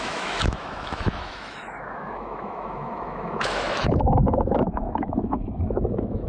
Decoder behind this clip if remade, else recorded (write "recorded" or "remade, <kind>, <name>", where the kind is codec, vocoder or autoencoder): remade, autoencoder, DAC-VAE